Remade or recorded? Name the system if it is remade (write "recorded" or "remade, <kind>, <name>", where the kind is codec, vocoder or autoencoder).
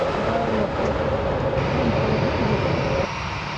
recorded